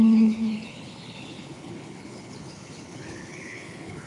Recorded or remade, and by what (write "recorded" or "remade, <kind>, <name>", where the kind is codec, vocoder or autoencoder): remade, codec, HILCodec